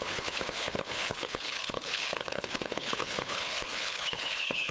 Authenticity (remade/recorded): remade